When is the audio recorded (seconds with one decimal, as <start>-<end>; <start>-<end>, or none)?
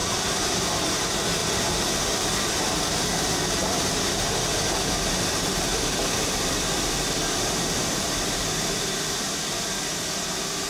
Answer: 0.6-1.4; 2.0-5.7; 9.5-10.7